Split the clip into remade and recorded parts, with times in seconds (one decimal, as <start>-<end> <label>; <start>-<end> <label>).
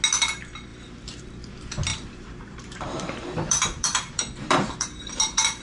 0.0-0.7 recorded; 0.7-1.2 remade; 1.2-1.9 recorded; 1.9-5.6 remade